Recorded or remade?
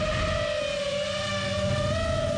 recorded